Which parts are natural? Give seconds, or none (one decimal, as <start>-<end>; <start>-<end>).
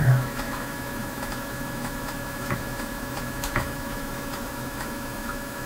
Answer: none